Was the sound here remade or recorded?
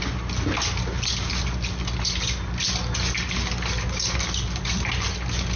recorded